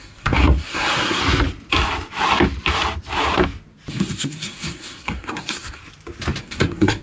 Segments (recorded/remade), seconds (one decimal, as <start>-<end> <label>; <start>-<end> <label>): 0.0-1.2 remade; 1.2-3.9 recorded; 3.9-5.8 remade; 5.8-6.4 recorded; 6.4-7.0 remade